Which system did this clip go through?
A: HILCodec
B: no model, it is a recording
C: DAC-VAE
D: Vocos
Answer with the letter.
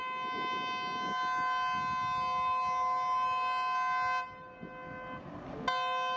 B